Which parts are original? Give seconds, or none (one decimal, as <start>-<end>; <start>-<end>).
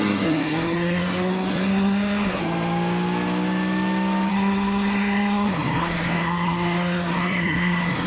2.4-4.3